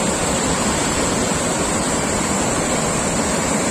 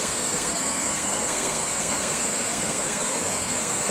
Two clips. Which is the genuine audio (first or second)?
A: first